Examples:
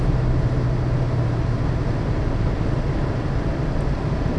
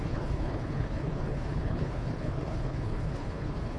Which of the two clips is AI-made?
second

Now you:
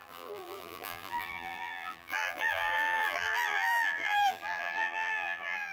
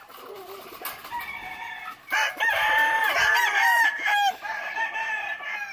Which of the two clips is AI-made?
first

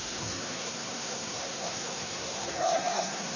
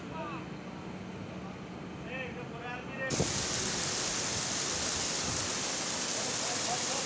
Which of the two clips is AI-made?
first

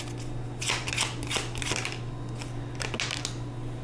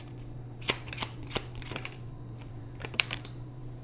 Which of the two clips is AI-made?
second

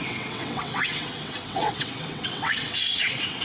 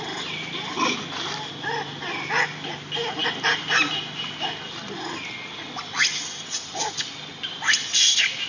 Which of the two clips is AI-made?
first